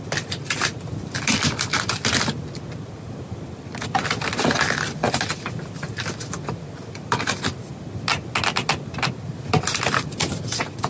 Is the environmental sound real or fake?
real